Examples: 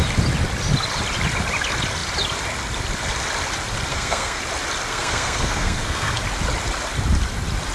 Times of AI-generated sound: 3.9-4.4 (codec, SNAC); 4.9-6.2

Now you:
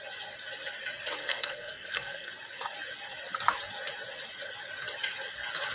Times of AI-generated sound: 1.2-2.3 (codec, SNAC)

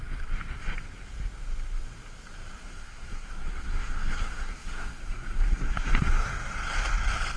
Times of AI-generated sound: 2.6-5.9 (codec, SNAC)

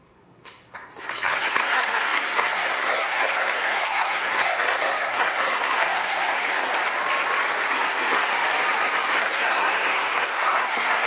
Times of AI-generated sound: 0.0-6.7 (codec, SNAC); 7.7-8.3; 9.2-11.1